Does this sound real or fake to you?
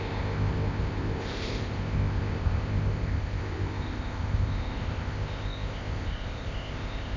fake